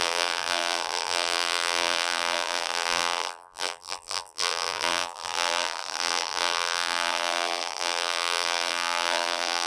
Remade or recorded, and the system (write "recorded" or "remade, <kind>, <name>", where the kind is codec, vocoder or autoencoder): remade, vocoder, BigVGAN v2